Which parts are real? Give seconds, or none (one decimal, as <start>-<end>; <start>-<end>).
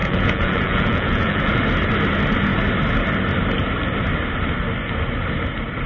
1.6-5.9